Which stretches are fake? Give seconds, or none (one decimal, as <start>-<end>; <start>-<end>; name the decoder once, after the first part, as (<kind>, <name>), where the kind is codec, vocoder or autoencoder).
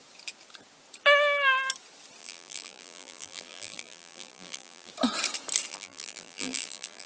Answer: 2.2-4.9 (vocoder, BigVGAN v2); 5.7-7.1